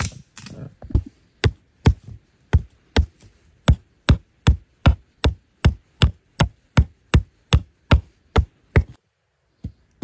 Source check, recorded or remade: recorded